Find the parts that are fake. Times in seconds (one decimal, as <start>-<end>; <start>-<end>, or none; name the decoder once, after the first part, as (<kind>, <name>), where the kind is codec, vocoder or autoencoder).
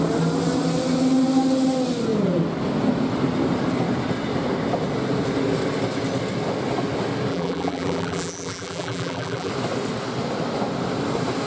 7.3-9.5 (vocoder, BigVGAN v2)